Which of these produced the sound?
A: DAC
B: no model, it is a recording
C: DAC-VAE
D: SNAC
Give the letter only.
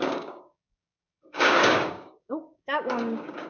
A